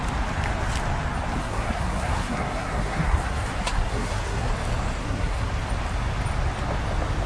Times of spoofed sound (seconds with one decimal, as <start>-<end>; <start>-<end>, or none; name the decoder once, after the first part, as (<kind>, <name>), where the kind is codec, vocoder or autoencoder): 1.4-4.5 (codec, SNAC); 5.0-5.5